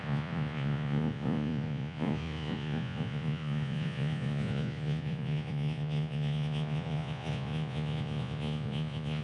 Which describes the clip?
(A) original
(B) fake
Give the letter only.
B